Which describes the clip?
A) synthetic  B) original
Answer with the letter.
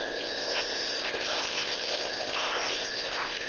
A